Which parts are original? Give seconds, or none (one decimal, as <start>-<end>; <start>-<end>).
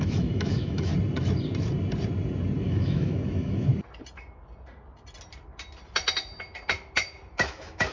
0.9-2.6; 3.7-7.3